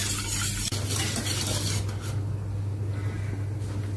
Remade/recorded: recorded